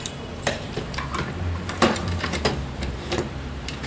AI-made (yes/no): yes